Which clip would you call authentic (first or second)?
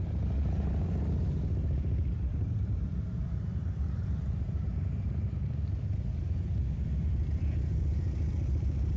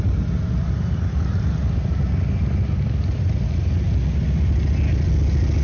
second